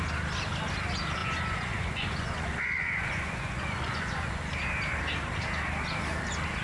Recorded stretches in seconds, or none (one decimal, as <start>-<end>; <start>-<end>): 0.0-1.2; 4.4-6.6